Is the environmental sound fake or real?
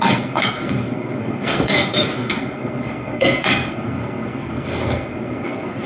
fake